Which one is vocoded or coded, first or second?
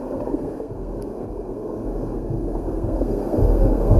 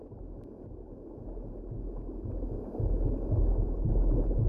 first